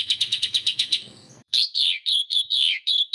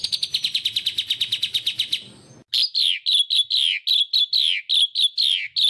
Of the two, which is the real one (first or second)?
second